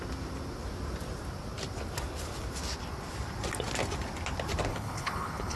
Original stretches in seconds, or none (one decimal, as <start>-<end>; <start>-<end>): 0.0-4.7